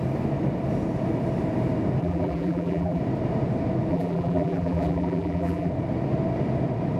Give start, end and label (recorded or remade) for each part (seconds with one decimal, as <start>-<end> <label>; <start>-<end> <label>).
0.0-2.0 recorded; 2.0-3.0 remade; 3.0-3.9 recorded; 3.9-5.7 remade; 5.7-7.0 recorded